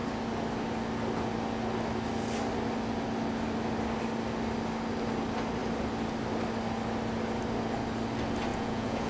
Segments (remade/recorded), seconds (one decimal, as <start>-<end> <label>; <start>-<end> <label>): 0.0-8.5 recorded; 8.5-9.1 remade